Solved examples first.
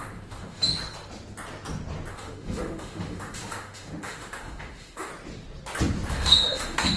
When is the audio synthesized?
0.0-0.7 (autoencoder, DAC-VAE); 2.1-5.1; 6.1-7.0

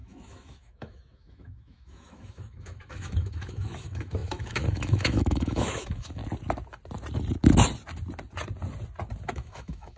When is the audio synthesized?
0.0-6.2 (autoencoder, DAC-VAE); 9.3-10.0

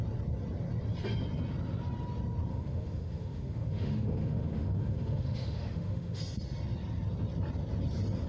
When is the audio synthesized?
2.5-6.2 (autoencoder, DAC-VAE)

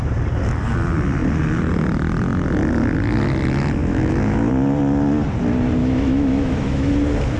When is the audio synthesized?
3.8-4.5 (autoencoder, DAC-VAE); 5.8-6.9